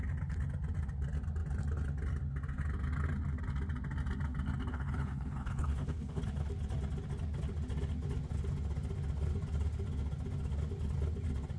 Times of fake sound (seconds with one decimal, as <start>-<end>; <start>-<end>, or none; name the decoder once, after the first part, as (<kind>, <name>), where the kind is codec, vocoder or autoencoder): 4.7-6.2 (codec, HILCodec)